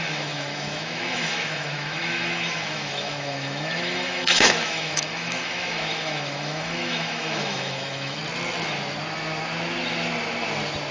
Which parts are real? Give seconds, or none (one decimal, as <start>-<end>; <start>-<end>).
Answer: 8.2-10.9